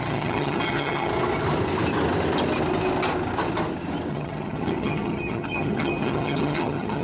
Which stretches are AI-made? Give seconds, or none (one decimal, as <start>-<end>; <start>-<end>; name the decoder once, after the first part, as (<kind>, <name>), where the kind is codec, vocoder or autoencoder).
0.0-1.1 (vocoder, HiFi-GAN); 4.1-7.0